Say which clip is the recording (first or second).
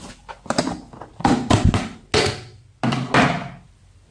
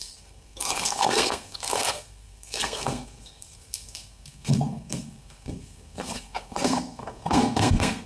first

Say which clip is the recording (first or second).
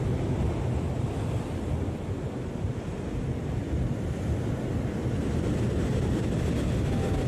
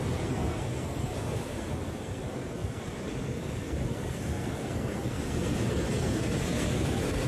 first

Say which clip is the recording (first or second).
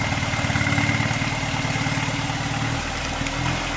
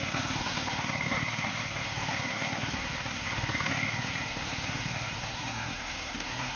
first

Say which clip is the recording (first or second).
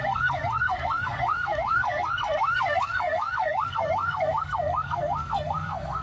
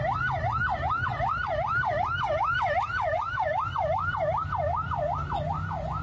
second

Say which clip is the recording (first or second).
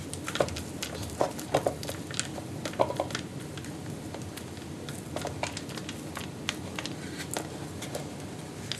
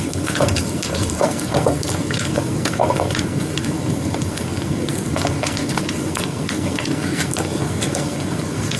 first